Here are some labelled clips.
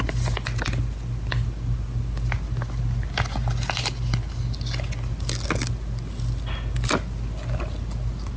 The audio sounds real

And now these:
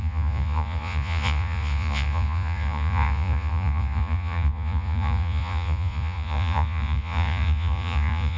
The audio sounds fake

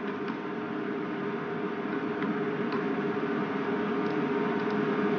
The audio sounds real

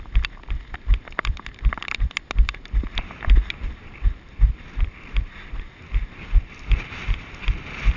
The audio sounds real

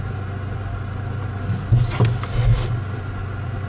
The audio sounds real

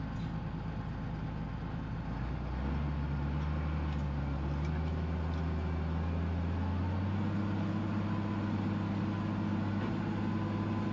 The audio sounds real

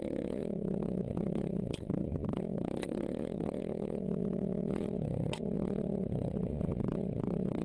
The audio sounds fake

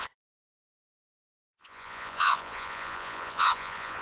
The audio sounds fake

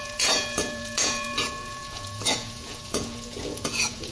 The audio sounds fake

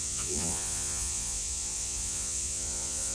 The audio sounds fake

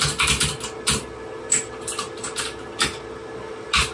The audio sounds real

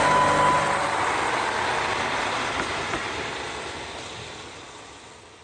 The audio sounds real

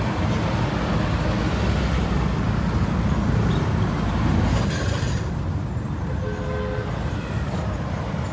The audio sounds real